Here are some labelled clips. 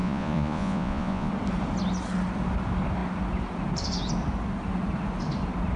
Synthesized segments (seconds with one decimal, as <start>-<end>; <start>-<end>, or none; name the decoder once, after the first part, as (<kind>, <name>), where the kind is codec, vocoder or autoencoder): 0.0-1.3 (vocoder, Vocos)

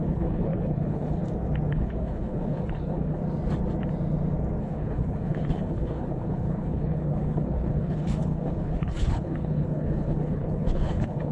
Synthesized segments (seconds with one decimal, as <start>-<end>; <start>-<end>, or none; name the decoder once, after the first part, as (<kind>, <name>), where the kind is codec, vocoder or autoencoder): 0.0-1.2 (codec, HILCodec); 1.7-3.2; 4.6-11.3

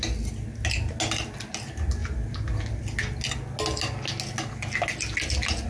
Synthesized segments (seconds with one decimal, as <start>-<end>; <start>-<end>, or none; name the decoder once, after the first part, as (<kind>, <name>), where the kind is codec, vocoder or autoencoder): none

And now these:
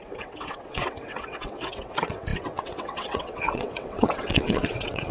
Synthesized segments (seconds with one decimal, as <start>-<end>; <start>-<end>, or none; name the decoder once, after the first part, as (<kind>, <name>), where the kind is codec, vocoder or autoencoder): 0.0-5.1 (vocoder, WaveNeXt)

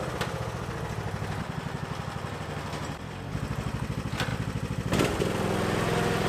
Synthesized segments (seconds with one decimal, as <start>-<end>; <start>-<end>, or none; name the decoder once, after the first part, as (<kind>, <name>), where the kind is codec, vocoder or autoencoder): none

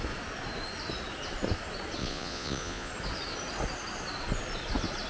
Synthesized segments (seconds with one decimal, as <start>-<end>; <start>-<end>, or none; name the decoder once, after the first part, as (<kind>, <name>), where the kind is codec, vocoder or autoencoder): 2.0-2.9 (vocoder, Vocos)

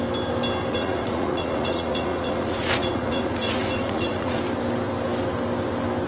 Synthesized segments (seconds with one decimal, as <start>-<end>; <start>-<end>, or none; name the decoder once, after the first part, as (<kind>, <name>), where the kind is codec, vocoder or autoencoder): 0.7-4.4 (vocoder, Vocos)